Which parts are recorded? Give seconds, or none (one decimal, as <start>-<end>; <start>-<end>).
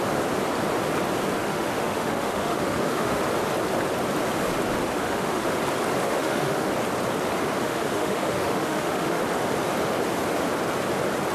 0.0-1.4; 3.2-4.9; 5.5-6.0; 6.7-7.6; 9.2-11.3